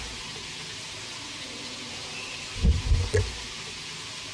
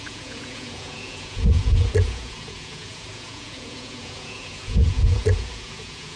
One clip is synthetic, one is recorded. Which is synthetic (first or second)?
second